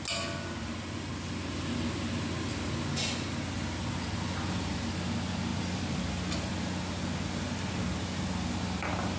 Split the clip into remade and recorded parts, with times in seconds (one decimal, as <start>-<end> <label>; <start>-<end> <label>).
0.0-5.5 recorded; 5.5-6.0 remade; 6.0-9.2 recorded